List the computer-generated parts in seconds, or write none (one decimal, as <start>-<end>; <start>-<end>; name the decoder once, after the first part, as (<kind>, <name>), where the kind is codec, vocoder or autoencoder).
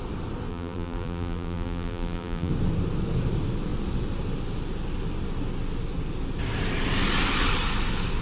0.5-2.5 (vocoder, BigVGAN v2)